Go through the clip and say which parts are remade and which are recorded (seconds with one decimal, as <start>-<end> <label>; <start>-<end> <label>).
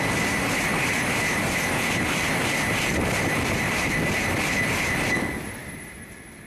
0.0-6.5 recorded